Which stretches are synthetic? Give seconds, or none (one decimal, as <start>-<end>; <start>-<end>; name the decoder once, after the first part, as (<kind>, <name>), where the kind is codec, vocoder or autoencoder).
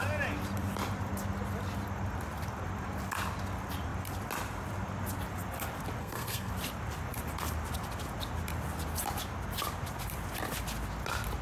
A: 6.0-6.5 (codec, SNAC)